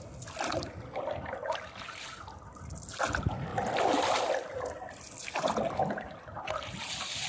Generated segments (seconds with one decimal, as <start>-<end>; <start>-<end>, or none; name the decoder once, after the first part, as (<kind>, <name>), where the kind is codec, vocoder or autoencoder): 3.5-6.8 (vocoder, BigVGAN v2)